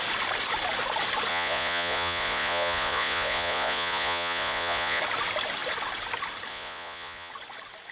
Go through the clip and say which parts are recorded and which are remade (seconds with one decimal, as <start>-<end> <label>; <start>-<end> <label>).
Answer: 0.0-1.3 recorded; 1.3-5.0 remade; 5.0-6.5 recorded; 6.5-7.3 remade; 7.3-7.9 recorded